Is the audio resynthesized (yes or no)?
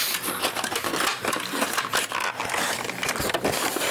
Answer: no